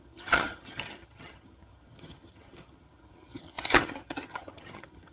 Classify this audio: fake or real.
fake